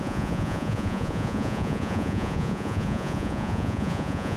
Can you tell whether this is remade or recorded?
remade